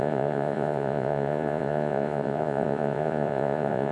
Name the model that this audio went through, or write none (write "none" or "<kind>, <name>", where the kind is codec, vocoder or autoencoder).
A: vocoder, Vocos